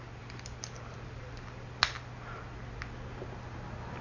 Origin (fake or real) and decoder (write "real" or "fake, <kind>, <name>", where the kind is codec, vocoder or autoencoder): real